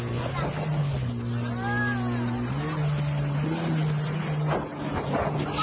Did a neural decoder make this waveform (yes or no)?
no